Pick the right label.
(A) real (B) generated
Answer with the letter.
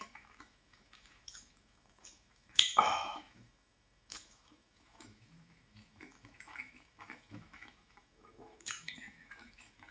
B